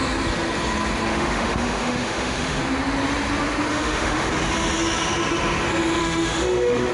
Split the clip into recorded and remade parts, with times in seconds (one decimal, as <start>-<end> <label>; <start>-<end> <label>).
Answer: 0.0-1.1 recorded; 1.1-2.6 remade; 2.6-3.7 recorded; 3.7-4.3 remade; 4.3-6.0 recorded; 6.0-6.9 remade